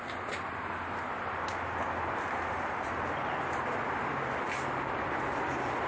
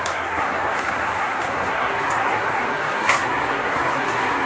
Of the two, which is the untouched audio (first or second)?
first